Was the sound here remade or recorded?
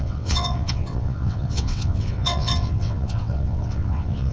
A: remade